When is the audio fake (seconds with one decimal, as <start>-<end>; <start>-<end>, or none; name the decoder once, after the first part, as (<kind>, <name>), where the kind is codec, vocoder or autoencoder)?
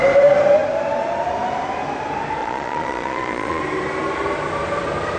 2.4-3.6 (vocoder, Vocos)